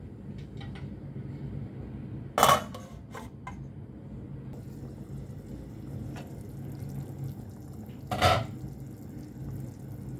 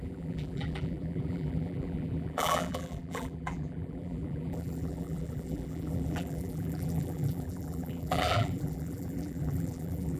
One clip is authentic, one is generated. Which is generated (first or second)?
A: second